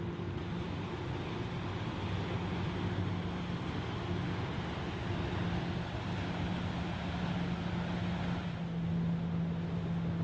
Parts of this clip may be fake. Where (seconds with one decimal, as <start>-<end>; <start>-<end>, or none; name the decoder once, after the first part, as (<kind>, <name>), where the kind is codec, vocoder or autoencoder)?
none